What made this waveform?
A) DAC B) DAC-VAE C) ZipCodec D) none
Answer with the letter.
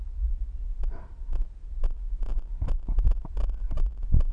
D